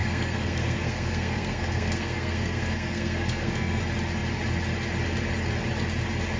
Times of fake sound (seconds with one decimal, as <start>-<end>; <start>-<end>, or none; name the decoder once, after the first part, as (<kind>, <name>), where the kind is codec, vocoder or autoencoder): 0.0-3.8 (codec, SNAC)